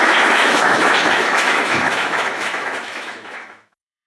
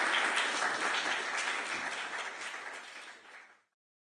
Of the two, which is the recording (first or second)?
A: second